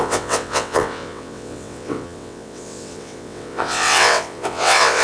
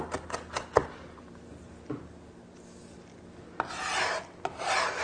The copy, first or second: first